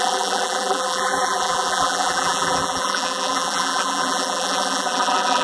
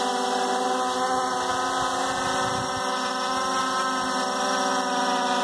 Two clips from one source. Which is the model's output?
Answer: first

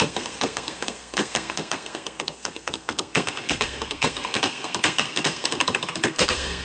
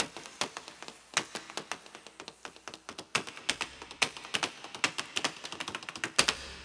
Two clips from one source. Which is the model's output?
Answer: first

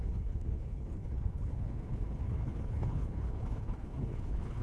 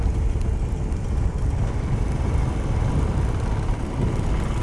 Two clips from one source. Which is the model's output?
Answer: first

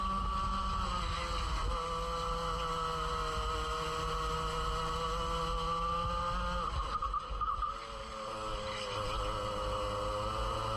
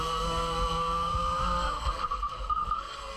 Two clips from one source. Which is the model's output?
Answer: second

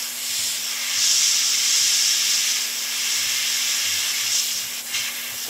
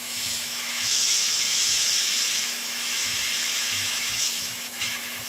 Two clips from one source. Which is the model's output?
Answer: second